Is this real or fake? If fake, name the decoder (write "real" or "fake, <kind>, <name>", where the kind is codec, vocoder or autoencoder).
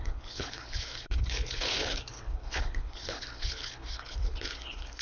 fake, codec, HILCodec